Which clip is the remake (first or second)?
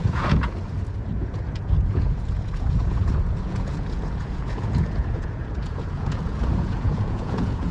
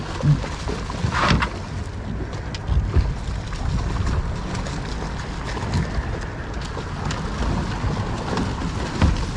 first